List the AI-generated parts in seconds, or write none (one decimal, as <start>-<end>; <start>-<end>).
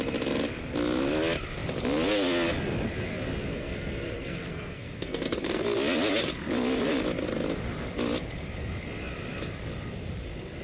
3.5-5.6